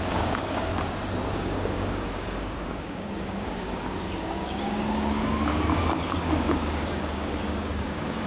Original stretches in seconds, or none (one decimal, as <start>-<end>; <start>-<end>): 0.7-1.3